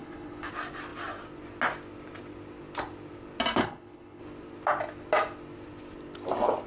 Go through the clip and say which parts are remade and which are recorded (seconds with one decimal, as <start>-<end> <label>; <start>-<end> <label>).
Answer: 0.0-0.5 remade; 0.5-3.6 recorded; 3.6-4.2 remade; 4.2-6.7 recorded